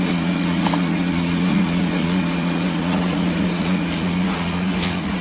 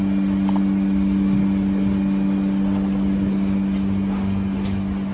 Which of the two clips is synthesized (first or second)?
first